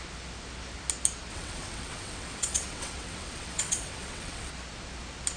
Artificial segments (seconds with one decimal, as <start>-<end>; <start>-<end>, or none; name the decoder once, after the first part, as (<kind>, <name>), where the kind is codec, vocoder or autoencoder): 1.3-4.5 (vocoder, WaveNeXt)